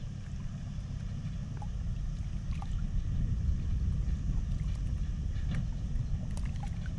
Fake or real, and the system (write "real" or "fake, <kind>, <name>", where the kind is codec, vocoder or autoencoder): real